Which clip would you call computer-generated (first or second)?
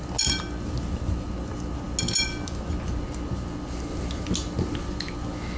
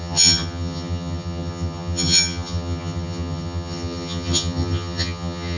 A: second